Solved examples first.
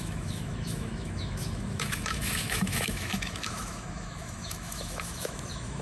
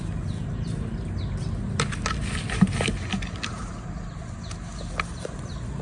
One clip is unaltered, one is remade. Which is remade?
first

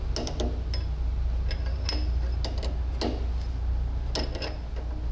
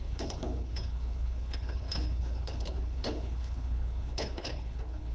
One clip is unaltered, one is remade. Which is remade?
second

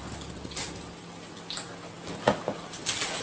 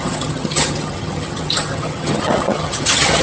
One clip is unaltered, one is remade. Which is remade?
second